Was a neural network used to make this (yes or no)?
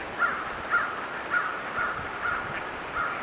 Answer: no